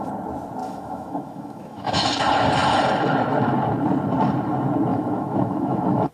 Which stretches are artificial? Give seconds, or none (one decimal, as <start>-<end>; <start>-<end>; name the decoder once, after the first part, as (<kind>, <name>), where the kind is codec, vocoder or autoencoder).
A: 0.6-2.1 (autoencoder, DAC-VAE); 4.9-6.1